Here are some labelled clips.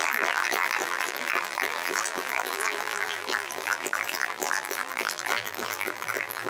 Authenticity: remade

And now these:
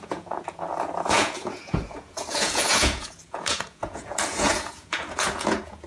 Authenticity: remade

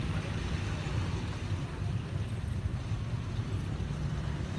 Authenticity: remade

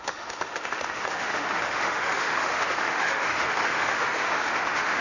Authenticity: remade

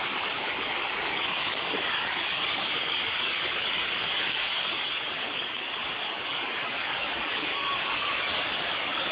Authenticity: remade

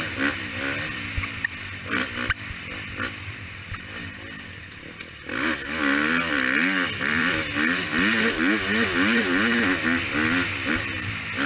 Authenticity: recorded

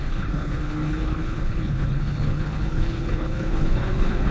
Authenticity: remade